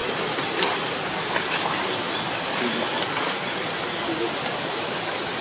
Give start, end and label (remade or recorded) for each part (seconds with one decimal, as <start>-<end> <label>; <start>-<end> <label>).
0.0-5.4 recorded